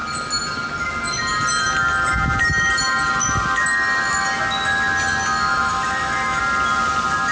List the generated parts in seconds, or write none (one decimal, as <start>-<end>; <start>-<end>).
5.5-6.4